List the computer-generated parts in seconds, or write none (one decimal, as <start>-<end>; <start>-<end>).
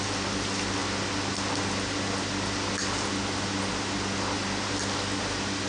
none